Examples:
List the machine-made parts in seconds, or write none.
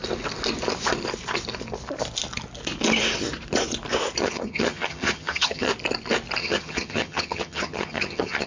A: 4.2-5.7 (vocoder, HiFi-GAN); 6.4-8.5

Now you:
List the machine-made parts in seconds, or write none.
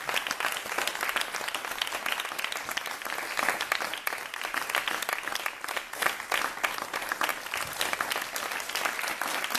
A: none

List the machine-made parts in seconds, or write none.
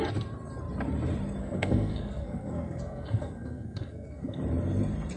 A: 1.4-4.4 (codec, SNAC)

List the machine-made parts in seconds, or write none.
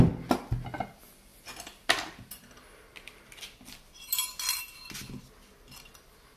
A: none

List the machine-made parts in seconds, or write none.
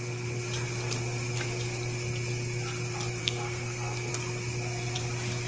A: 3.2-4.1 (codec, SNAC)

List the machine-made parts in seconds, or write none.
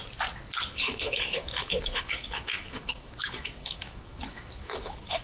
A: 0.7-5.2 (autoencoder, DAC-VAE)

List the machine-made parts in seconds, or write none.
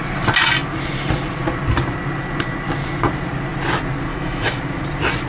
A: 4.1-4.6 (autoencoder, DAC-VAE)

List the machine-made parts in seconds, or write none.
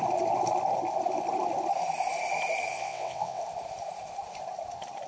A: 2.7-3.4 (vocoder, WaveNeXt)